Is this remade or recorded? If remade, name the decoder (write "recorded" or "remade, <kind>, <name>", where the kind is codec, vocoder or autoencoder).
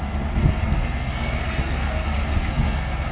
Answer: remade, codec, SNAC